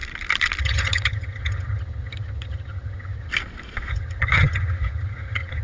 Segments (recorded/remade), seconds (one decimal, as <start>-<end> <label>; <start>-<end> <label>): 0.0-0.6 recorded; 0.6-3.3 remade; 3.3-3.9 recorded; 3.9-5.6 remade

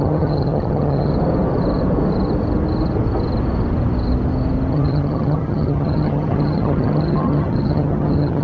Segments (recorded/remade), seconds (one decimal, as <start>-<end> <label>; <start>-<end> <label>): 0.0-1.1 remade; 1.1-4.7 recorded; 4.7-8.4 remade

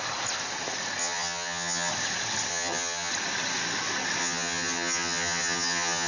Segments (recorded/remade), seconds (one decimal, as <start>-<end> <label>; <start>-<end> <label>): 0.0-1.0 recorded; 1.0-1.9 remade; 1.9-2.5 recorded; 2.5-3.1 remade; 3.1-4.2 recorded; 4.2-6.1 remade

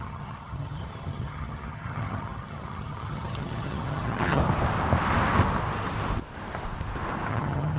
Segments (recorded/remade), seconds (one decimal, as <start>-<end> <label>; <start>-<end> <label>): 0.0-4.4 remade; 4.4-7.3 recorded; 7.3-7.8 remade